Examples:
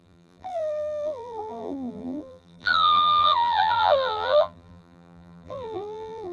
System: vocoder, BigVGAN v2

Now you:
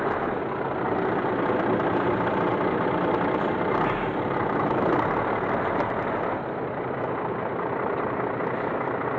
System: none